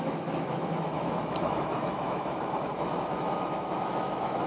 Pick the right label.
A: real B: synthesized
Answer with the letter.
B